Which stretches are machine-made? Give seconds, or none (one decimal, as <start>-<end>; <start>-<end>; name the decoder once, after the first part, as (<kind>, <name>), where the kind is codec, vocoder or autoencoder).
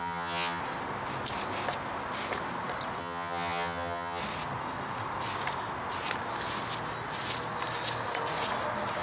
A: 0.0-0.6 (vocoder, HiFi-GAN); 3.0-4.2